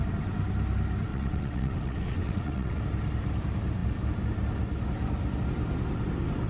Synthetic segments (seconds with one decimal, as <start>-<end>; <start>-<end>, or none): 1.1-2.8